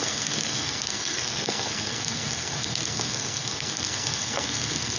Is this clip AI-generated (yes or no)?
yes